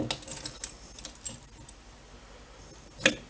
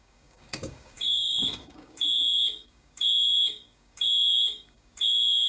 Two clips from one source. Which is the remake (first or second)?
second